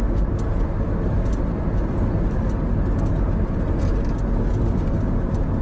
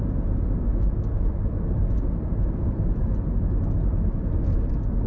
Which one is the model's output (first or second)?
second